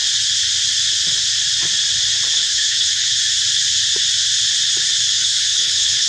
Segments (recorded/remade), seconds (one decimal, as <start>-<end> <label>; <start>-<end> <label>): 0.0-2.3 recorded; 2.3-3.1 remade; 3.1-5.1 recorded; 5.1-6.1 remade